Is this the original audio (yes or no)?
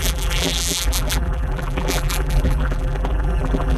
no